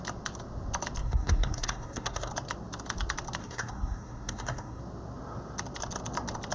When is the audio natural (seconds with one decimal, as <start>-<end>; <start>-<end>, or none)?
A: 0.0-1.0; 2.3-3.4; 4.8-6.5